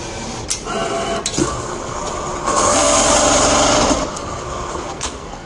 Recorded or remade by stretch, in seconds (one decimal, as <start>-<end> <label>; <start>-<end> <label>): 0.0-1.4 recorded; 1.4-2.0 remade; 2.0-2.4 recorded; 2.4-3.0 remade; 3.0-4.1 recorded; 4.1-5.5 remade